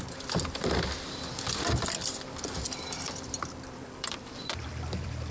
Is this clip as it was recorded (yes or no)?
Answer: no